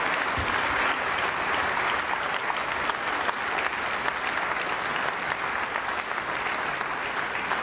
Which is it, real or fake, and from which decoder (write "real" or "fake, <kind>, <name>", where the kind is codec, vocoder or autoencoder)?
real